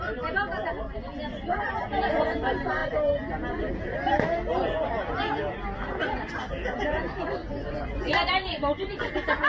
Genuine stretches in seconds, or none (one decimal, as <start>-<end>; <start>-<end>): 0.0-7.4; 9.1-9.5